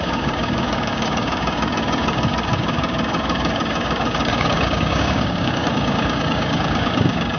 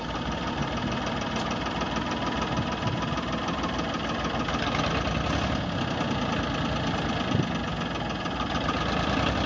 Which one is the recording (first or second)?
second